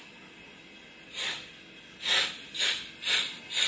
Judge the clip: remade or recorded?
recorded